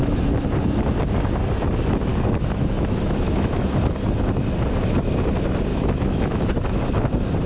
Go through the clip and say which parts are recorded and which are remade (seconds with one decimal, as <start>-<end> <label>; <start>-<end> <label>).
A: 0.0-2.1 recorded; 2.1-3.7 remade; 3.7-5.7 recorded; 5.7-6.8 remade; 6.8-7.5 recorded